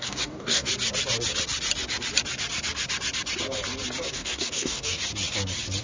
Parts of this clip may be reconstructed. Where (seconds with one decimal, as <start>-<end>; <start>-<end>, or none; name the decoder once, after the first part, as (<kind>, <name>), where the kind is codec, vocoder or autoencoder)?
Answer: 0.0-0.7 (codec, DAC); 4.1-5.0